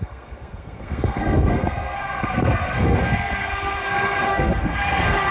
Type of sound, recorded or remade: remade